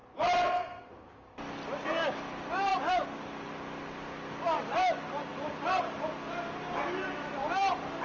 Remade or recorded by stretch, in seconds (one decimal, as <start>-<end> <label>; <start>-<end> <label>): 0.0-8.0 recorded